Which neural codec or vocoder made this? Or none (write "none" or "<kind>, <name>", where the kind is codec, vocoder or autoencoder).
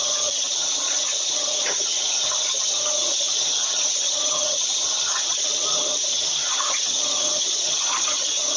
vocoder, HiFi-GAN